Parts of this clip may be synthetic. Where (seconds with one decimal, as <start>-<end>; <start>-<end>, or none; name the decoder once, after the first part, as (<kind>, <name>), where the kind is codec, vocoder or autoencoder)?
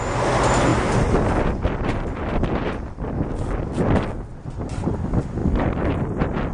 4.3-4.9 (vocoder, BigVGAN v2); 5.4-6.0